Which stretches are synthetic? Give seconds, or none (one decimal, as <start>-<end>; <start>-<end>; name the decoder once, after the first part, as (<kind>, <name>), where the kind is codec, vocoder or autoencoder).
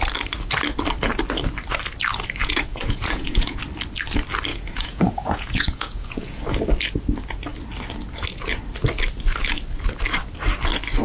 2.4-3.6 (vocoder, Vocos); 4.5-6.4